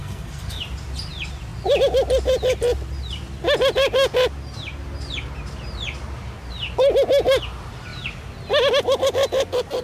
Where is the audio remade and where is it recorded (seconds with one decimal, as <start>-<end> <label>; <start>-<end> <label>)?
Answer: 0.0-0.6 remade; 0.6-9.8 recorded